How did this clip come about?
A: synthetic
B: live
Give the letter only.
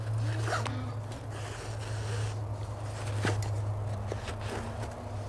B